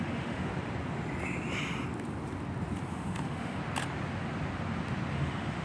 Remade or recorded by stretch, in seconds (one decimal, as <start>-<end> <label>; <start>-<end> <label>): 0.0-0.5 remade; 0.5-2.9 recorded; 2.9-3.6 remade; 3.6-5.1 recorded; 5.1-5.6 remade